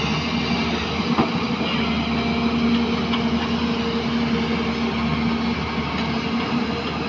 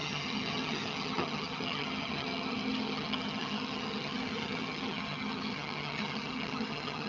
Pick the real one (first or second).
first